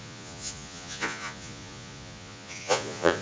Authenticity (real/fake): fake